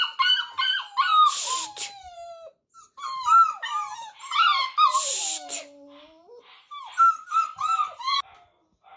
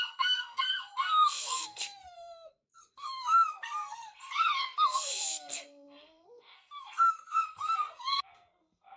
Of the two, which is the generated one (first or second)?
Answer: second